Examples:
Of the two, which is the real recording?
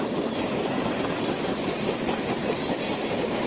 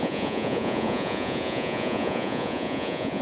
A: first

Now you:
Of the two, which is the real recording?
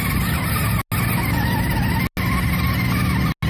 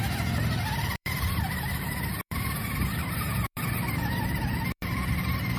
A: first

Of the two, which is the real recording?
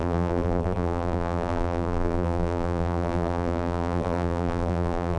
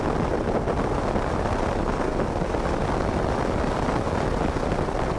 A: second